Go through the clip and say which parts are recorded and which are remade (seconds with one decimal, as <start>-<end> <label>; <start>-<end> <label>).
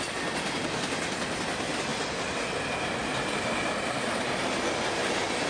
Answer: 0.0-5.5 recorded